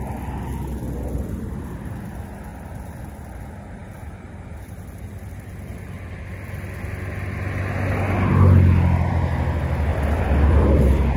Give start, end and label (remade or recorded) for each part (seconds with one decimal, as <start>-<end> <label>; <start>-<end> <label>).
0.0-2.5 recorded; 2.5-3.0 remade; 3.0-9.9 recorded; 9.9-11.2 remade